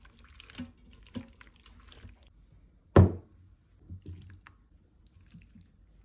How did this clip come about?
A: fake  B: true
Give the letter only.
B